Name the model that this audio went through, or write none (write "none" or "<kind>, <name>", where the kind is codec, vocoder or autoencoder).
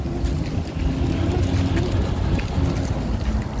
none